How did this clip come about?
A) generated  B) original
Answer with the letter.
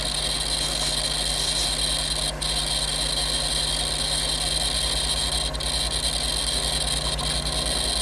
B